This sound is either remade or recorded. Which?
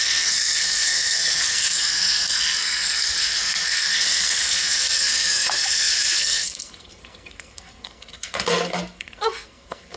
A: remade